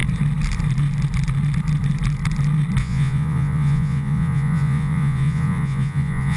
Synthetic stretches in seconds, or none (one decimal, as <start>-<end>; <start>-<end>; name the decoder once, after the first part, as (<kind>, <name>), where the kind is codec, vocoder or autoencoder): 2.8-6.4 (vocoder, Vocos)